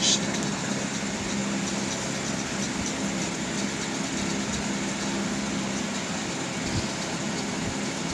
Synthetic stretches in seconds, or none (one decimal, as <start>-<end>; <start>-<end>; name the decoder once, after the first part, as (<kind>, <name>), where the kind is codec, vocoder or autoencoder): none